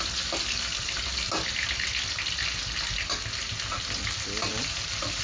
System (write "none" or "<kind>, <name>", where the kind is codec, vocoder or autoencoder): none